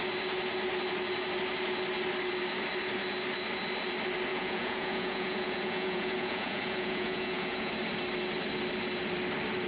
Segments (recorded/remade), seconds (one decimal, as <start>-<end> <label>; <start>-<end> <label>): 0.0-4.3 recorded; 4.3-7.7 remade; 7.7-9.7 recorded